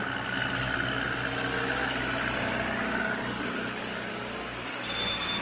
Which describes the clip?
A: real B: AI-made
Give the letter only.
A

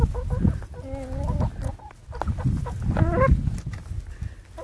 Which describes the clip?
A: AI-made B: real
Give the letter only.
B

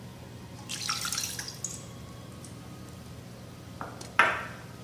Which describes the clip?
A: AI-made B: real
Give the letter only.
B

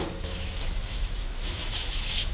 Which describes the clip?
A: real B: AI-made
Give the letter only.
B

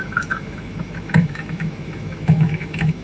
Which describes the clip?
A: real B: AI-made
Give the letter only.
B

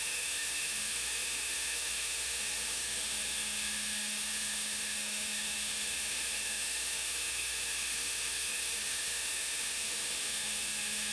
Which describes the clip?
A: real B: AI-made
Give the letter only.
B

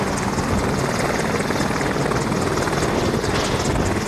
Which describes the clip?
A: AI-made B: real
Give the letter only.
B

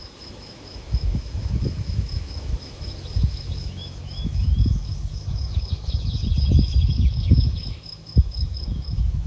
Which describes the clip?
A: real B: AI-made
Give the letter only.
B